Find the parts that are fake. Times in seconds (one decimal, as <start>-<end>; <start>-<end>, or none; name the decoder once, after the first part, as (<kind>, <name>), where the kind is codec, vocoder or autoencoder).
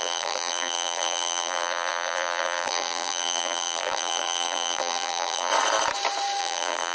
0.0-5.5 (vocoder, BigVGAN v2); 6.4-6.9